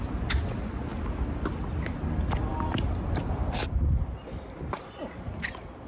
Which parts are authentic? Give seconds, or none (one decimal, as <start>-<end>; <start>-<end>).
0.0-5.9